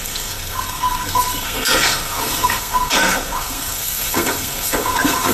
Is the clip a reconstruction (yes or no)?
yes